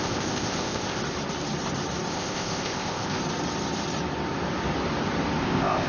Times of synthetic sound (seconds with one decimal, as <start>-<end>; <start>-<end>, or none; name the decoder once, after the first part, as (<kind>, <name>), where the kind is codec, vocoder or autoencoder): 0.0-1.0 (codec, ZipCodec); 2.1-3.2; 5.4-5.9